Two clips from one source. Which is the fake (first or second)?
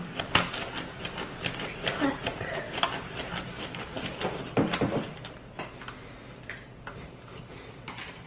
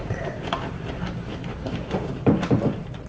second